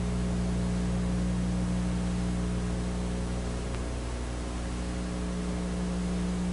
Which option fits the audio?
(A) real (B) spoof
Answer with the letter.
A